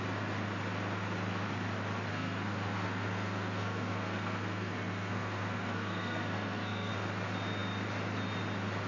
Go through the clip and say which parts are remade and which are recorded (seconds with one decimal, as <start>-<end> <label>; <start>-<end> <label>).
0.0-2.1 recorded; 2.1-6.9 remade; 6.9-8.9 recorded